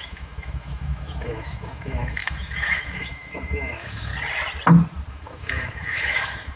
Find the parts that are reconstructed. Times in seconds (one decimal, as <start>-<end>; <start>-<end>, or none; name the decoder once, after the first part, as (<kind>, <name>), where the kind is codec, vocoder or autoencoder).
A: 0.0-4.1 (autoencoder, DAC-VAE); 5.1-6.6